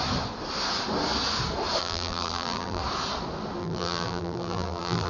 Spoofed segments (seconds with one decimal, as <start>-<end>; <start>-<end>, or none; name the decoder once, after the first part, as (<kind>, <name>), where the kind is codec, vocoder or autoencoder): 1.8-2.8 (vocoder, BigVGAN v2); 3.6-5.1